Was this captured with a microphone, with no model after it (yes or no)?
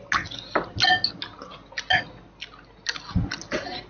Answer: yes